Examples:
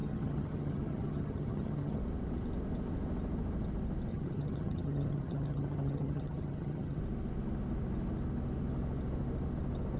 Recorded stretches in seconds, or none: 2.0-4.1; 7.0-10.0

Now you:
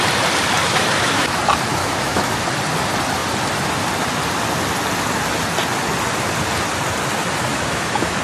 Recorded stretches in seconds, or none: 0.0-0.6; 1.4-1.8; 2.4-7.5

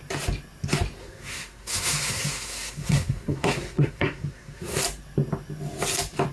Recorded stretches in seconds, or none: 0.0-1.0; 4.8-6.3